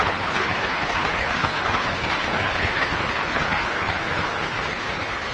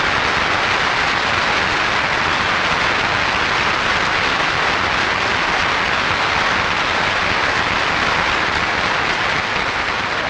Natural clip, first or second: second